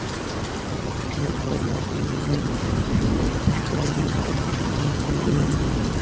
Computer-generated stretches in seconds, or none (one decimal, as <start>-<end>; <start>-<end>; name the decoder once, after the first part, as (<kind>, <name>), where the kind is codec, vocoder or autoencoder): 0.7-2.5 (vocoder, HiFi-GAN); 3.5-5.6